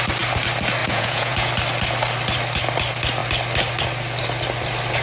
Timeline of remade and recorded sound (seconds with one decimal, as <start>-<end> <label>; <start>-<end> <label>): 0.0-0.8 recorded; 0.8-1.5 remade; 1.5-5.0 recorded